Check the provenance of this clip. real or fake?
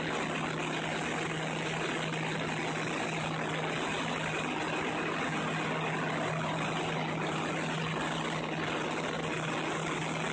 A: real